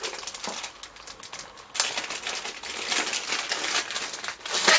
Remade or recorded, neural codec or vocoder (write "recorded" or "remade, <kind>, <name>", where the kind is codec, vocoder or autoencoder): recorded